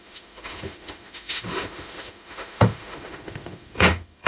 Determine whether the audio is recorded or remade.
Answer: remade